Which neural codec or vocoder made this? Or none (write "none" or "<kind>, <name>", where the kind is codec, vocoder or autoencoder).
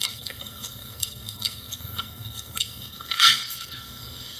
codec, SNAC